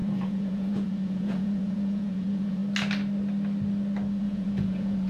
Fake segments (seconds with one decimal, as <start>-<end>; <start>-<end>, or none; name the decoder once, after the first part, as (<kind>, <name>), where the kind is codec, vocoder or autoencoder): 0.0-2.6 (vocoder, Vocos); 4.2-5.1